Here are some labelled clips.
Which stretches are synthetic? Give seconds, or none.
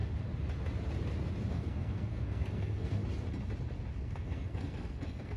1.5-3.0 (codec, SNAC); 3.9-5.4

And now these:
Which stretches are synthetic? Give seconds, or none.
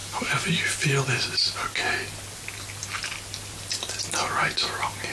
none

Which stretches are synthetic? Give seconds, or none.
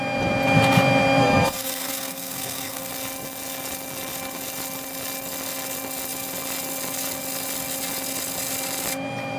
1.2-2.9 (codec, SNAC)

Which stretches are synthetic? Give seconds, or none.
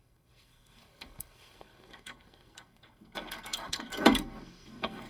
0.0-5.1 (codec, SNAC)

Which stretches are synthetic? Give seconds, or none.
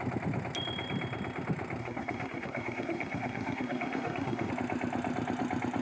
1.8-4.5 (codec, SNAC)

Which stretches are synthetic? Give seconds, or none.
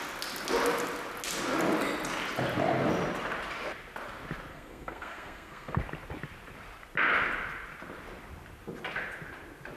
4.5-5.8 (codec, SNAC)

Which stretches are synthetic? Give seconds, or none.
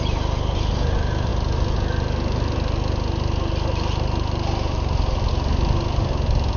none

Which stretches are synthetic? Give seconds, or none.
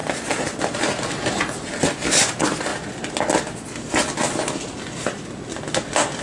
none